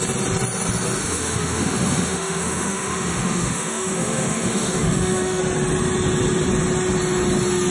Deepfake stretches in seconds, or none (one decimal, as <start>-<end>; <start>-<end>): 1.0-5.4